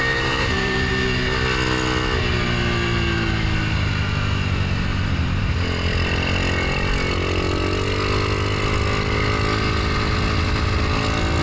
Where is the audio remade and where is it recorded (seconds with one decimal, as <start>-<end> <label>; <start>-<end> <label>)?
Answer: 0.0-0.9 remade; 0.9-4.9 recorded; 4.9-5.5 remade; 5.5-11.4 recorded